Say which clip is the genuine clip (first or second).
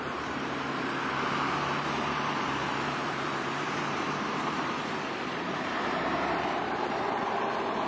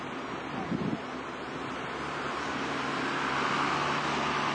second